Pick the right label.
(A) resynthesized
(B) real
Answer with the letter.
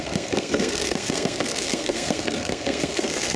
A